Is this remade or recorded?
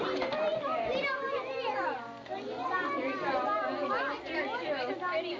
recorded